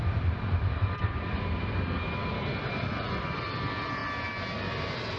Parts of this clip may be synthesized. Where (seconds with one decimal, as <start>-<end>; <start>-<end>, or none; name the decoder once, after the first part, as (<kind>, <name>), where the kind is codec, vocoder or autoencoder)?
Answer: 0.0-4.0 (vocoder, BigVGAN v2); 4.6-5.2